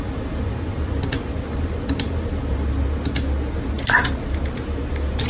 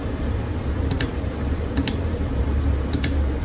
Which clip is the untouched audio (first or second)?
first